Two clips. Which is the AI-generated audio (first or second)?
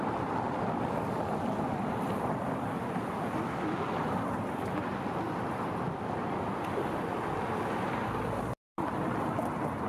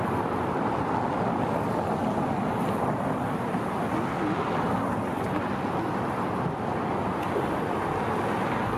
first